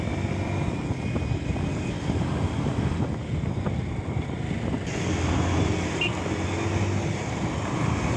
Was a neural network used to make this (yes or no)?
no